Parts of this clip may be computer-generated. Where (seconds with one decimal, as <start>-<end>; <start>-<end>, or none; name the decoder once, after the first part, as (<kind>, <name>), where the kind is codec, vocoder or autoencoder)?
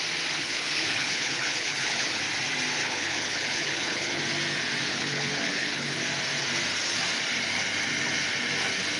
0.4-2.2 (codec, HILCodec); 2.8-4.2; 4.9-6.0